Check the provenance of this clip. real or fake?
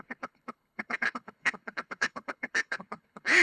fake